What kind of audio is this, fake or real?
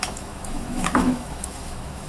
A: fake